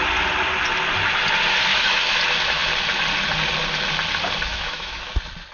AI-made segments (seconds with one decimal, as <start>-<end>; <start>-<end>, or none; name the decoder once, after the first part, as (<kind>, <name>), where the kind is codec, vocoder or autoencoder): 1.7-2.2 (autoencoder, DAC-VAE); 4.5-5.1